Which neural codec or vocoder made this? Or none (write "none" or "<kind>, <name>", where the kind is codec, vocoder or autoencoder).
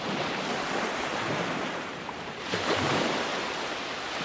none